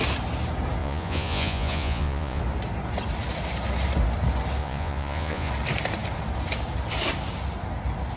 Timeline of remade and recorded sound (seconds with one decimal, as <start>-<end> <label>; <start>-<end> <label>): 0.0-0.8 recorded; 0.8-2.4 remade; 2.4-4.6 recorded; 4.6-5.5 remade; 5.5-8.2 recorded

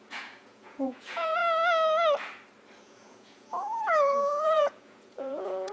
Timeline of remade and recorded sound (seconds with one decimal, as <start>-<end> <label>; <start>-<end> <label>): 0.0-1.4 remade; 1.4-2.8 recorded; 2.8-5.7 remade

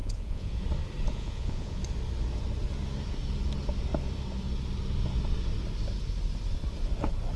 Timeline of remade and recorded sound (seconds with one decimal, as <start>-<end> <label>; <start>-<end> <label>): 0.0-0.6 remade; 0.6-1.1 recorded; 1.1-1.8 remade; 1.8-7.4 recorded

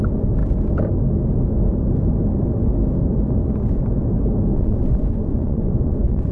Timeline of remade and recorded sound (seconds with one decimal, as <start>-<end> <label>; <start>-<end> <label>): 0.0-4.5 recorded; 4.5-6.3 remade

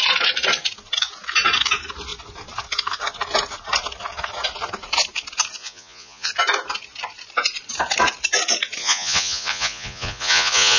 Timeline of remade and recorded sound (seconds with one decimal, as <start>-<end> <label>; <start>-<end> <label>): 0.0-5.6 recorded; 5.6-6.3 remade; 6.3-8.8 recorded; 8.8-10.8 remade

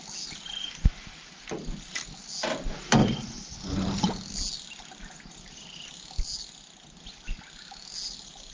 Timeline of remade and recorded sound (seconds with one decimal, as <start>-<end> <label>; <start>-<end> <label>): 0.0-8.5 recorded

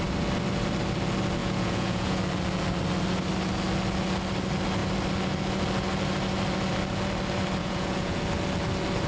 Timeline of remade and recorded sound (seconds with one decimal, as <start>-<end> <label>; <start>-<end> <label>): 0.0-1.4 recorded; 1.4-2.2 remade; 2.2-7.6 recorded; 7.6-8.2 remade; 8.2-9.1 recorded

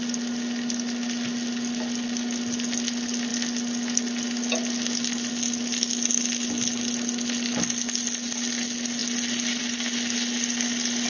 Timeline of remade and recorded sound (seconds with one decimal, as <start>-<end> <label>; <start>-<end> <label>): 0.0-11.1 recorded